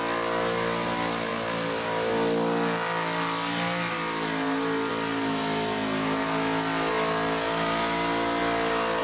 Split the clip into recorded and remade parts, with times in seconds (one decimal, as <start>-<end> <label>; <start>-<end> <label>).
0.0-9.0 recorded